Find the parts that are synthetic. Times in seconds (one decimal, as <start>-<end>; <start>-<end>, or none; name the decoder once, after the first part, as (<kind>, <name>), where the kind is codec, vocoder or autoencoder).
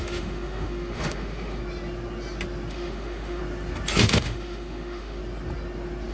0.0-1.6 (autoencoder, DAC-VAE); 2.7-3.4; 4.0-5.2